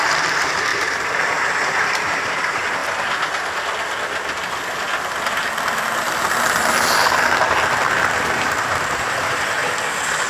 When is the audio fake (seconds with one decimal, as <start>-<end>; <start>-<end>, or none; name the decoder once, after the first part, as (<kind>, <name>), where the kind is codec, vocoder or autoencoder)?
0.0-2.8 (vocoder, BigVGAN v2); 7.9-9.6